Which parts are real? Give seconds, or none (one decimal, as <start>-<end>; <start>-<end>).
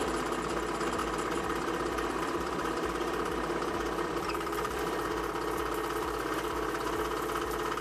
0.0-1.0; 4.8-7.8